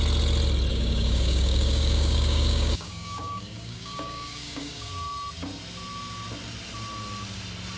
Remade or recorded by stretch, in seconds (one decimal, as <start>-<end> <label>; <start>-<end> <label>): 0.0-0.7 recorded; 0.7-4.9 remade; 4.9-7.8 recorded